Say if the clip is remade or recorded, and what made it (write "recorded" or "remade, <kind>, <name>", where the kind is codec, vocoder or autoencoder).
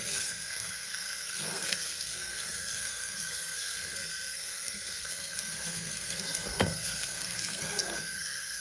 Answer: remade, codec, SNAC